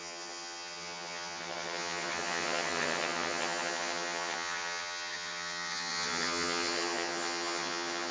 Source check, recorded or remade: remade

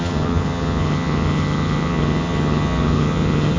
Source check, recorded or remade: remade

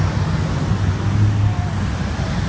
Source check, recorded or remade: recorded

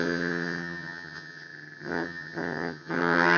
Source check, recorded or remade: remade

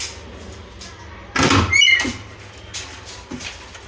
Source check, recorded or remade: recorded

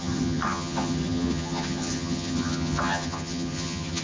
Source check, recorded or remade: remade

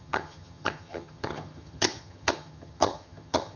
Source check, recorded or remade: remade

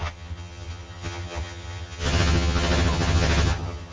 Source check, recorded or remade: remade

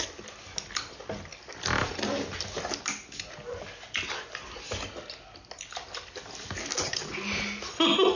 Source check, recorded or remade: recorded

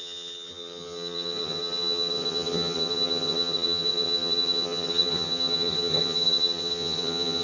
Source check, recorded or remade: remade